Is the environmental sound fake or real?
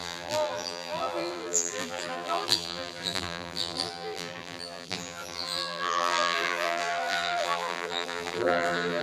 fake